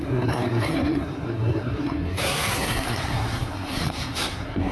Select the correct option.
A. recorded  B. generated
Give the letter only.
B